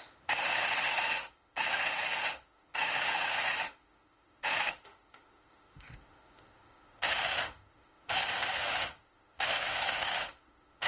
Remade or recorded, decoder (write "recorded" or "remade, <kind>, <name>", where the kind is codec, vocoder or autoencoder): remade, autoencoder, DAC-VAE